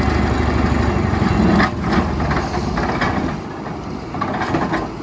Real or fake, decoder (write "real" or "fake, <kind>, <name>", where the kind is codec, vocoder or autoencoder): real